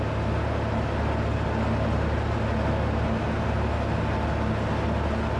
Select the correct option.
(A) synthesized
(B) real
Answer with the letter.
B